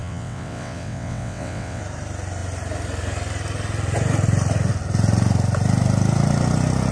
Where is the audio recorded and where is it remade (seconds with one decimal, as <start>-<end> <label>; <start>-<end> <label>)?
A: 0.0-1.8 remade; 1.8-6.9 recorded